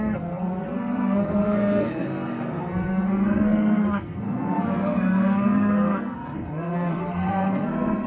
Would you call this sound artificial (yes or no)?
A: yes